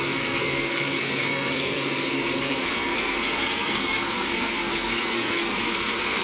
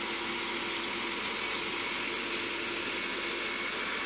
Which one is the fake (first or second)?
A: first